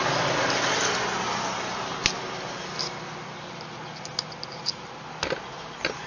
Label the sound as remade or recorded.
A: recorded